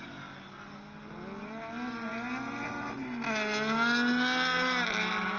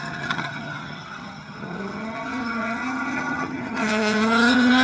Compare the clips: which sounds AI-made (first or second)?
second